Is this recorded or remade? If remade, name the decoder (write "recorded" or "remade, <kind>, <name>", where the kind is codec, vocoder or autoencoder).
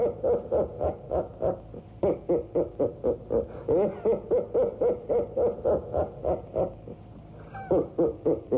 recorded